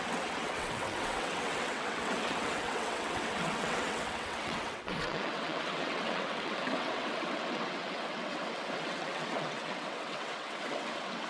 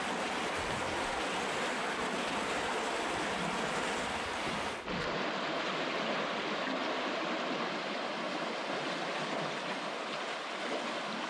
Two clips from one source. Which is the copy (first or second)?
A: first